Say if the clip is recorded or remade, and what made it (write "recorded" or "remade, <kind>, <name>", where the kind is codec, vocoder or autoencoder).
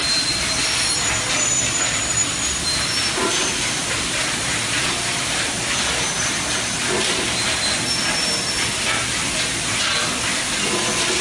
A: remade, vocoder, BigVGAN v2